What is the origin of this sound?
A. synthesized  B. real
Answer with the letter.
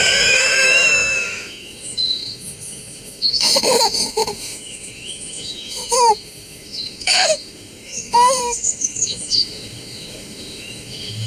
A